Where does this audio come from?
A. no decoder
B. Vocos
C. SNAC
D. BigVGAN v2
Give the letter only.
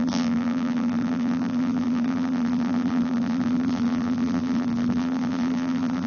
D